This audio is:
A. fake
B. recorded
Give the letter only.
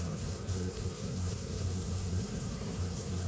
A